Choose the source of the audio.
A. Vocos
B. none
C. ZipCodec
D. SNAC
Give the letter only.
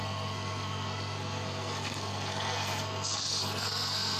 D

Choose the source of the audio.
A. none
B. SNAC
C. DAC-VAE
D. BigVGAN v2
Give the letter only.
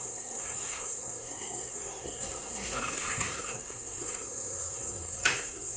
B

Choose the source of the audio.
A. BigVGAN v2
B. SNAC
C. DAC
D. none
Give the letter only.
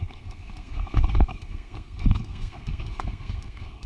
B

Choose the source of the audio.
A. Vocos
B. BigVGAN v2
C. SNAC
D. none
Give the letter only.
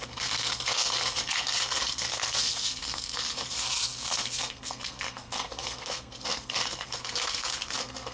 C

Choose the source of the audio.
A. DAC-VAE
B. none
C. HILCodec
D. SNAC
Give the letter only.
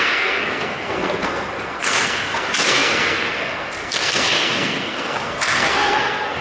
D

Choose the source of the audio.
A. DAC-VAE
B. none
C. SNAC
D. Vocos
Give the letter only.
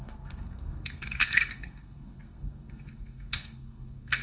C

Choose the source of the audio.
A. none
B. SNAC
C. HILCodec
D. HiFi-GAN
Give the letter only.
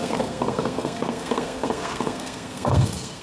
B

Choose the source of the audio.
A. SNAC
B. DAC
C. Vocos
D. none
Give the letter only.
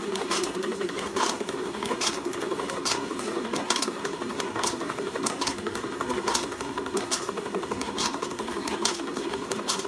A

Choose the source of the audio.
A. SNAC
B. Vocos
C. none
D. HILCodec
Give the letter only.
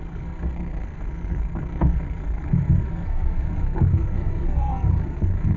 A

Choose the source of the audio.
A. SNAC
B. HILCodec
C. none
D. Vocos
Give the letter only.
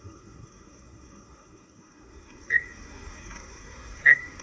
A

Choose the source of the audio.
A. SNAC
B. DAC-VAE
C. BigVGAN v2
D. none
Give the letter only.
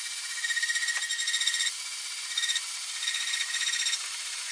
D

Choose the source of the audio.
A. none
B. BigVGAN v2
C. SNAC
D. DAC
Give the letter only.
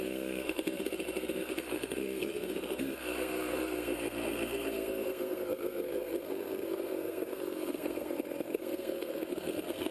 C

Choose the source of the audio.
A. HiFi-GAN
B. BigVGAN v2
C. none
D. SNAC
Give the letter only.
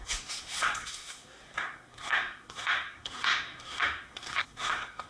D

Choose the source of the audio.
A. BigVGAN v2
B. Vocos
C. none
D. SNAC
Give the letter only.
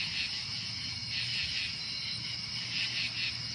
C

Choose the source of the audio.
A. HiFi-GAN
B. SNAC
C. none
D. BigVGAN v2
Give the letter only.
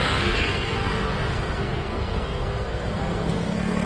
B